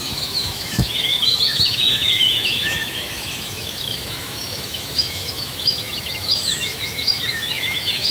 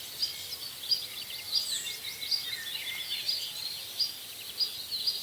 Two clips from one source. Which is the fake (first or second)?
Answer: first